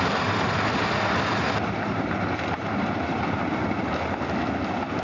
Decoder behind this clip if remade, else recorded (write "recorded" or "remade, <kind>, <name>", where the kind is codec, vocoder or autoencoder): recorded